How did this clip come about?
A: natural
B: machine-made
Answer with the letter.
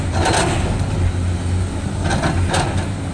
A